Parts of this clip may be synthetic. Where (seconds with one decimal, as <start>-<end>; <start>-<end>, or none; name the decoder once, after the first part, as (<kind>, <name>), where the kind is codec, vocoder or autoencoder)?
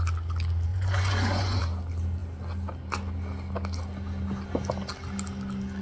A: 0.7-1.6 (vocoder, Vocos)